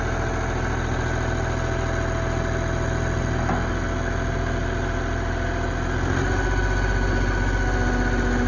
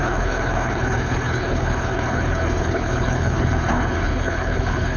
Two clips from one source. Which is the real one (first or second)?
first